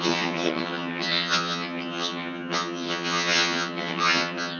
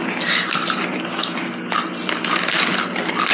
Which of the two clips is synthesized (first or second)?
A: first